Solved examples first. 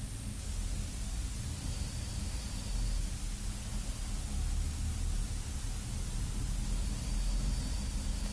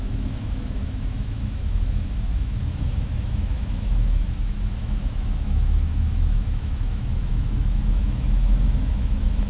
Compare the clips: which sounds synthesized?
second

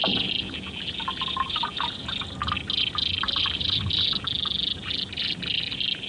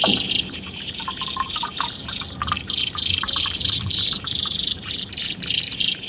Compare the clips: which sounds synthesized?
second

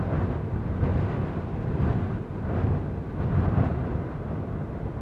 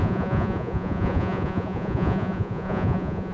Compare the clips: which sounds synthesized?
second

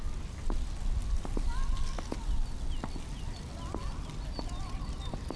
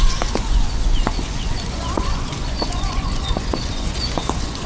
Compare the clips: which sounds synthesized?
second